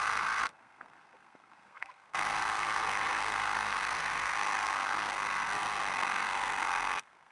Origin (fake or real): fake